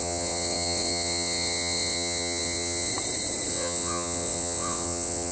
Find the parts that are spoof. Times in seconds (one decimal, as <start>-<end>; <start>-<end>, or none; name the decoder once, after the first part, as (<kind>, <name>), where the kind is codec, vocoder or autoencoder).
0.0-2.9 (vocoder, WaveNeXt); 3.5-5.3